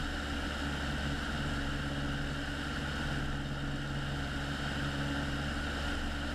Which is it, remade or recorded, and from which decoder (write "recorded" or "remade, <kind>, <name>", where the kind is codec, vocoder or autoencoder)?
recorded